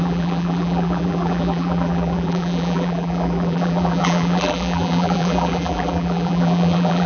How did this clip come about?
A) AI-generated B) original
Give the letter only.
A